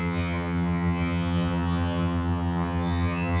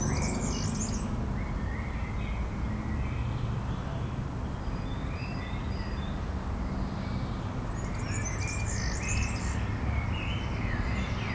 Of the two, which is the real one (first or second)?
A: second